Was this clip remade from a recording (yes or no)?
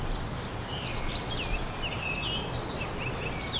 no